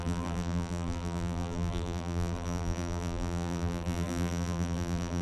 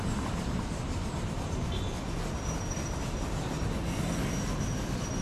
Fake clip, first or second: first